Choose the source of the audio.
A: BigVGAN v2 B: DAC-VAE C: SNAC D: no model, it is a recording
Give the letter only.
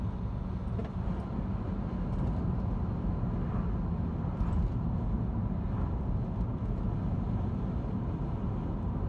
D